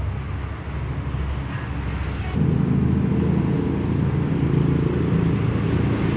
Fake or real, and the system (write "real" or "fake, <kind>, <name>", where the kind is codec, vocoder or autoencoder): real